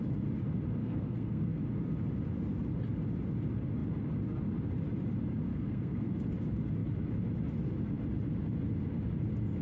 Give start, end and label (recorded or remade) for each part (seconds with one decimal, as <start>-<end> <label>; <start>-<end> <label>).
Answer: 0.0-0.8 recorded; 0.8-1.6 remade; 1.6-5.5 recorded; 5.5-6.2 remade; 6.2-9.6 recorded